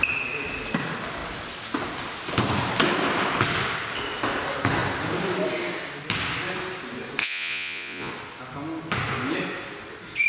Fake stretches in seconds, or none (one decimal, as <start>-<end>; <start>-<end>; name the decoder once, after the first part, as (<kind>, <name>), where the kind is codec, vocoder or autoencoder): 7.2-8.1 (vocoder, Vocos)